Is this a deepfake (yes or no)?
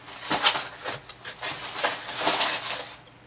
no